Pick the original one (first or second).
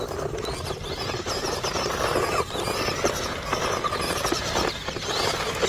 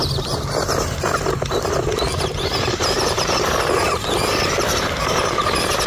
first